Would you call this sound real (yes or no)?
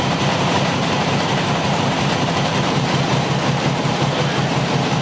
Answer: no